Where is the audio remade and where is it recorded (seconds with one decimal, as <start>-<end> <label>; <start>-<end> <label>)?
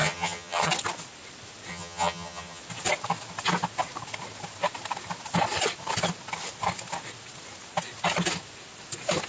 0.0-0.7 remade; 0.7-1.7 recorded; 1.7-2.6 remade; 2.6-9.3 recorded